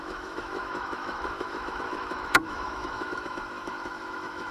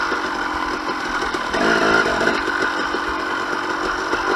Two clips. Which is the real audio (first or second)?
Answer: second